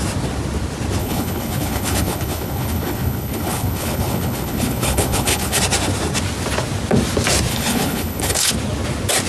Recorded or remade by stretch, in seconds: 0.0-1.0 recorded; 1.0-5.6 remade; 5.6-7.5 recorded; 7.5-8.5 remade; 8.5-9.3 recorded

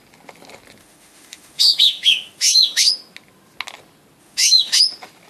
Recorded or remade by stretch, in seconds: 0.0-0.8 recorded; 0.8-2.9 remade; 2.9-4.2 recorded; 4.2-4.8 remade; 4.8-5.3 recorded

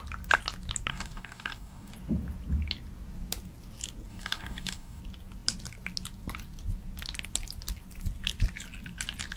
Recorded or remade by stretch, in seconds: 0.0-0.9 recorded; 0.9-1.9 remade; 1.9-4.1 recorded; 4.1-5.0 remade; 5.0-9.4 recorded